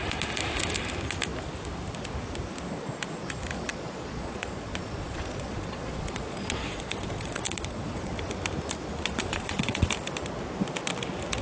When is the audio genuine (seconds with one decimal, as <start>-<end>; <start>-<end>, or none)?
0.0-3.7; 8.1-9.2; 9.9-11.4